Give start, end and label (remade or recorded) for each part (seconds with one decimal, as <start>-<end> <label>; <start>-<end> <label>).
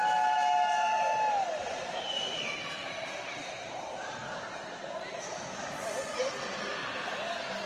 0.0-1.6 recorded; 1.6-6.2 remade; 6.2-6.7 recorded; 6.7-7.2 remade; 7.2-7.7 recorded